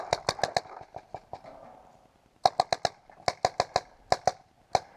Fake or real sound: real